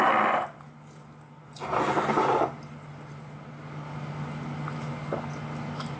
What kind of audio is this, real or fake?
real